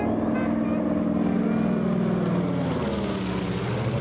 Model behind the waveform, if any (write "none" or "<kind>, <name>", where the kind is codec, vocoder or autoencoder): none